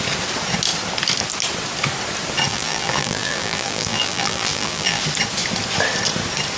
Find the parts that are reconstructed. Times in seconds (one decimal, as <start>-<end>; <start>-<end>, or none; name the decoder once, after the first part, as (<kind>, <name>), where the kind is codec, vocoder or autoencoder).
2.5-5.0 (vocoder, BigVGAN v2)

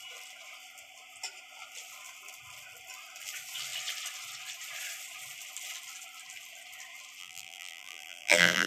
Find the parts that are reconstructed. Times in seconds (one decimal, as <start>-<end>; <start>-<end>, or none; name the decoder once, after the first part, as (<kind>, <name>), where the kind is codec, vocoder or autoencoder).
7.2-8.7 (vocoder, BigVGAN v2)

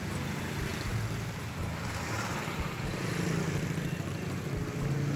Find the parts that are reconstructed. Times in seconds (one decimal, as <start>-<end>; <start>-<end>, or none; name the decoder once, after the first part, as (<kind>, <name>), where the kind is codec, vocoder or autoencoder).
0.7-3.4 (vocoder, BigVGAN v2)

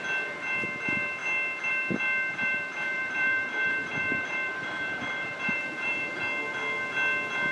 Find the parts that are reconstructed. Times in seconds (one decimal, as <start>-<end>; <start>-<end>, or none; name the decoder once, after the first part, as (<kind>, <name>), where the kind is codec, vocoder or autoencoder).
2.3-6.2 (vocoder, BigVGAN v2)